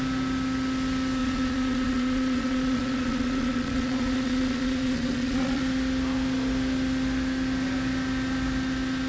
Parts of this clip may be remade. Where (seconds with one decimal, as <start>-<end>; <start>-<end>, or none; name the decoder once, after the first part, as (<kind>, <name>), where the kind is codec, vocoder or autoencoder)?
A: 1.2-5.6 (vocoder, Vocos)